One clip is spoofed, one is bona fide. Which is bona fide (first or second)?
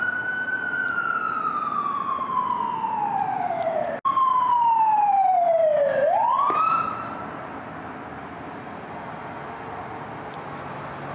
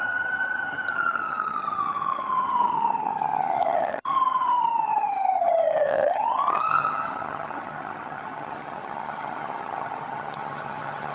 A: first